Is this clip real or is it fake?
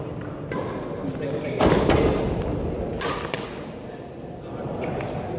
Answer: real